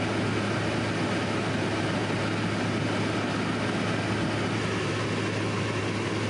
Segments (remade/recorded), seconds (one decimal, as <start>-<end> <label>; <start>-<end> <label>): 0.0-6.3 recorded